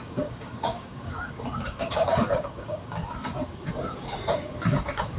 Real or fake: fake